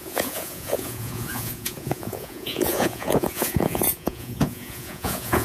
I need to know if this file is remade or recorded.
remade